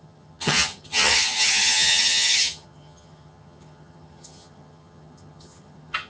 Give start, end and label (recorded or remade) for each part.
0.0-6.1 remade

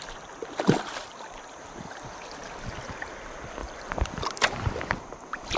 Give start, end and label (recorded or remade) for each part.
0.0-5.6 recorded